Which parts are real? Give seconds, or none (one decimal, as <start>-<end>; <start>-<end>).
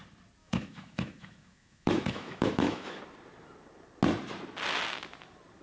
0.0-0.4; 3.0-5.6